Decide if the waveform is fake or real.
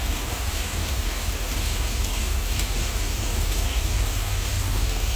fake